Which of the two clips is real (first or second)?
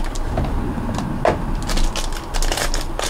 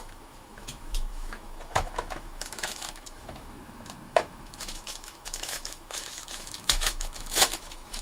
first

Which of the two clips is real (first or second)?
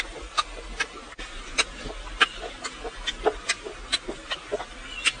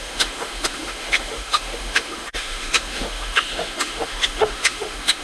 first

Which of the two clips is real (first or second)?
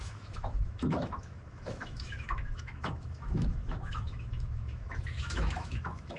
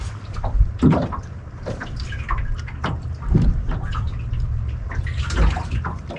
second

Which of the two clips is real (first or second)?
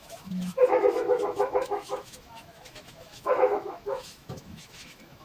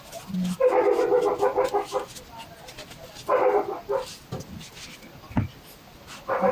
second